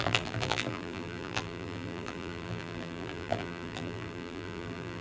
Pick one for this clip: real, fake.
fake